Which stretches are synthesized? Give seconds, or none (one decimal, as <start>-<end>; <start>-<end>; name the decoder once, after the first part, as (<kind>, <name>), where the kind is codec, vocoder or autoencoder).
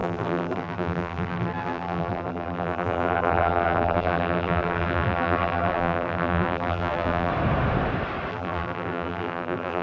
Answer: 0.0-7.3 (vocoder, BigVGAN v2); 8.3-9.8